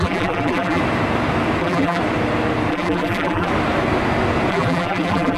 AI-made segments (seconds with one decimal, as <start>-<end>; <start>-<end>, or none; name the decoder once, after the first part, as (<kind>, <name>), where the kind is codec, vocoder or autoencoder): 0.0-0.8 (vocoder, BigVGAN v2); 1.6-2.0; 2.7-3.5; 4.5-5.4